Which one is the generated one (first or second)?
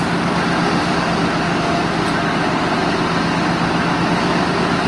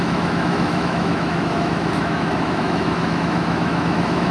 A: second